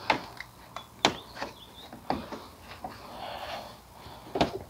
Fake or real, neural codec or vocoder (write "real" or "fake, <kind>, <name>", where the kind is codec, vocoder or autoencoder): real